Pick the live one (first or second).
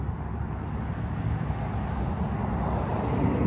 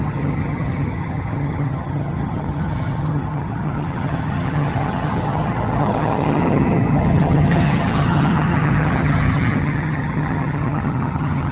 first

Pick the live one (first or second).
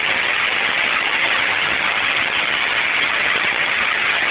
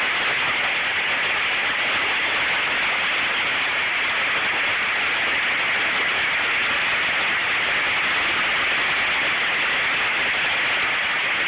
second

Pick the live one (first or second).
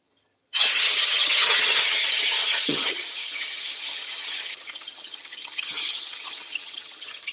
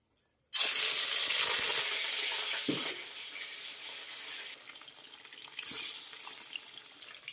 second